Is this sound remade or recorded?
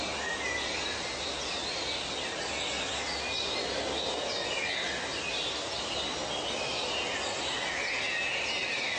recorded